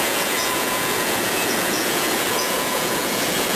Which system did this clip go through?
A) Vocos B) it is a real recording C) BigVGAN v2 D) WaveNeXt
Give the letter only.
A